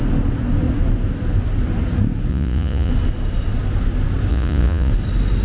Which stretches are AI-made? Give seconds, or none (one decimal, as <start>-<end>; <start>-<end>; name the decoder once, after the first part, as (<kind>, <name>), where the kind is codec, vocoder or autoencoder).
2.3-2.9 (vocoder, Vocos); 4.3-4.9